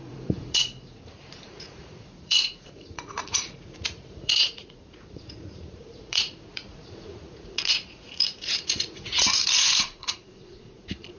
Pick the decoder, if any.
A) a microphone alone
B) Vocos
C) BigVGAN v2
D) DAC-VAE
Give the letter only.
B